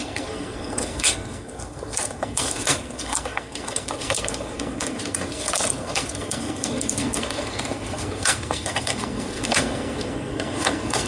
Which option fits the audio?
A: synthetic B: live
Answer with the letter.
A